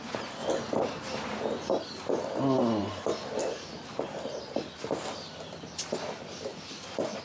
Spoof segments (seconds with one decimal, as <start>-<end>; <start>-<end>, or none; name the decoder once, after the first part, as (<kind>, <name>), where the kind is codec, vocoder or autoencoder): 2.8-5.7 (vocoder, BigVGAN v2)